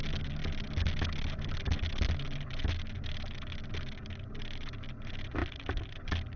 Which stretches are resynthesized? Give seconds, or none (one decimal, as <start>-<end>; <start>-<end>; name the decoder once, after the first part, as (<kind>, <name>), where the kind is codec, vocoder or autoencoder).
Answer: none